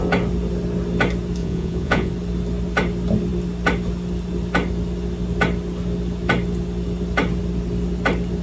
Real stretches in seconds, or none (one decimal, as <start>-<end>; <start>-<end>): 0.0-1.4; 2.1-8.4